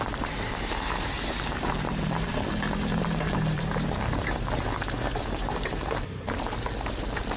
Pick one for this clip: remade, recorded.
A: remade